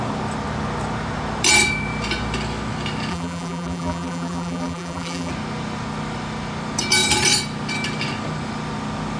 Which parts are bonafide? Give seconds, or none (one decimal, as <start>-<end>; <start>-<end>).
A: 0.0-3.1; 5.3-9.2